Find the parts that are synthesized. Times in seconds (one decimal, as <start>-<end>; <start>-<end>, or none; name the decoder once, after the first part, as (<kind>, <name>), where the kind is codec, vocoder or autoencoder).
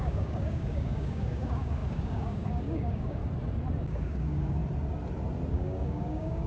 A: 0.0-3.2 (codec, DAC); 3.8-4.6; 5.5-6.5